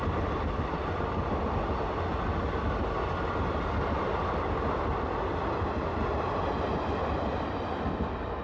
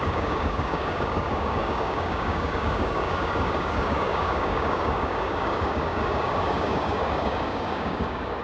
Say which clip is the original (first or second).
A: first